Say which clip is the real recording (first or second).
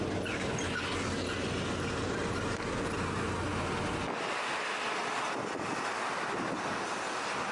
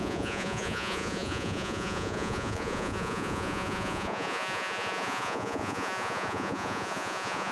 first